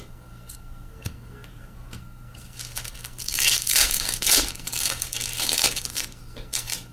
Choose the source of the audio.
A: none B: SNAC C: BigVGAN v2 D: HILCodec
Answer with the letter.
B